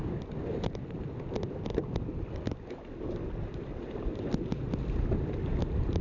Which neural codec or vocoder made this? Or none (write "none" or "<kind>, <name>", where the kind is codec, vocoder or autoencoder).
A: none